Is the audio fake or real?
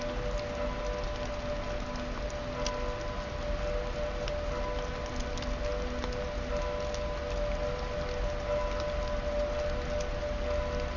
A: real